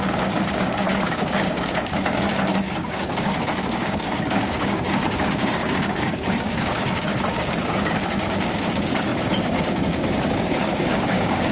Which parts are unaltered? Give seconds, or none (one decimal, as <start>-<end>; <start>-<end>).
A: none